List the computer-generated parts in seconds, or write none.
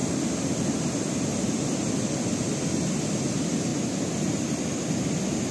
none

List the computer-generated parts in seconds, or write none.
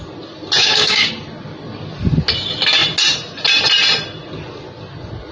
0.6-1.1 (codec, DAC)